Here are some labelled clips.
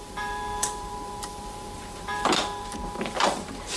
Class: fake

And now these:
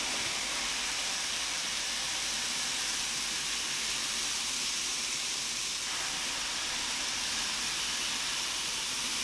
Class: fake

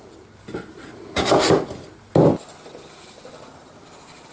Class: real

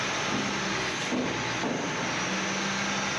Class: real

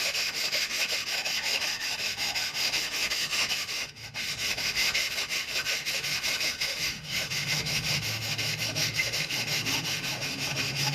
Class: fake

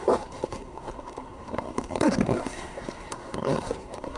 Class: fake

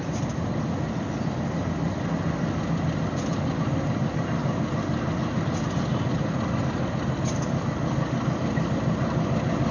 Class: real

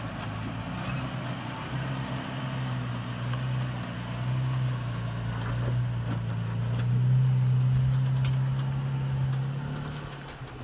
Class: real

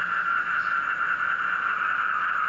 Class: real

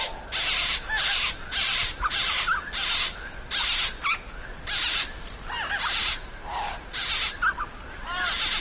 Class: real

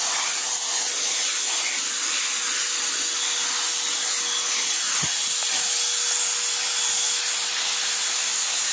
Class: real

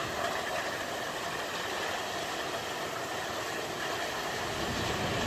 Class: real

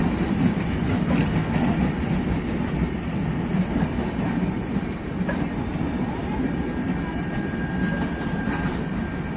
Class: real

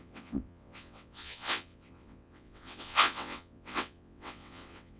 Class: fake